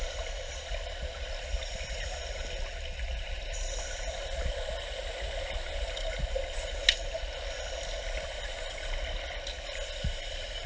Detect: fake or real real